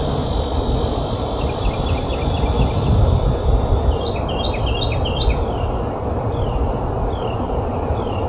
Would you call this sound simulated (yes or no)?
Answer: no